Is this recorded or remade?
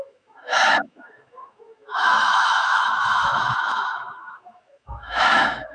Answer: remade